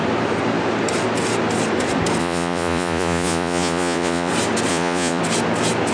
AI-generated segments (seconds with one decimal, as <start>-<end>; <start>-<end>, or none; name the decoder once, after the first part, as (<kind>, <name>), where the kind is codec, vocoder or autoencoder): 2.2-4.3 (vocoder, Vocos); 4.7-5.2